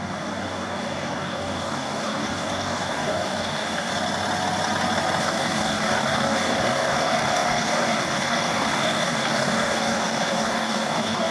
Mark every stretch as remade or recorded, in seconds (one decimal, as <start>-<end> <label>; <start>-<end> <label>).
0.0-3.9 remade; 3.9-5.2 recorded; 5.2-11.3 remade